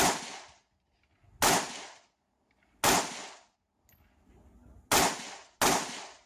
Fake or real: real